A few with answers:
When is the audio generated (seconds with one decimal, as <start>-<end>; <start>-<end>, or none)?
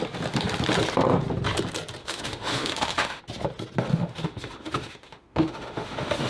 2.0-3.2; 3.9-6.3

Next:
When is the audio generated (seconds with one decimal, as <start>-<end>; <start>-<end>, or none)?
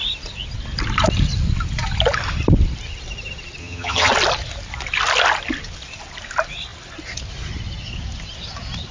3.6-4.1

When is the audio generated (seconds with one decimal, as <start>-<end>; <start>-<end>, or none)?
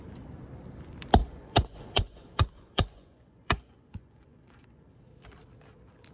1.2-4.9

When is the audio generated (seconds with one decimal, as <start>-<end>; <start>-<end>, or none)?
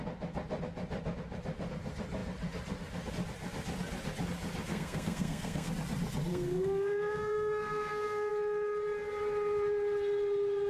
4.7-5.7; 6.3-8.3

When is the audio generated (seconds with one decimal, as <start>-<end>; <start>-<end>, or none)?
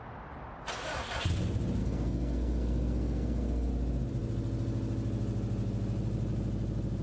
1.8-3.7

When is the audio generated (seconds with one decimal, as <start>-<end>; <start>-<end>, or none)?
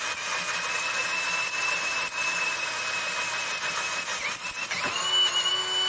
none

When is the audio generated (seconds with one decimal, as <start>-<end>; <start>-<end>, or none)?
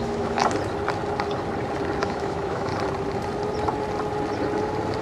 0.0-0.4; 2.0-2.7